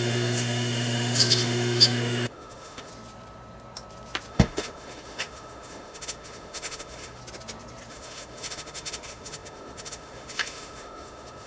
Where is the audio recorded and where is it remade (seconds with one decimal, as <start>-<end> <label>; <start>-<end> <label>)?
0.0-2.9 remade; 2.9-4.3 recorded; 4.3-7.2 remade; 7.2-7.9 recorded; 7.9-11.5 remade